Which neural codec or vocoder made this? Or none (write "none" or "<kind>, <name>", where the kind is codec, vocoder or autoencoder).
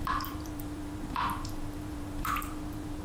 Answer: vocoder, BigVGAN v2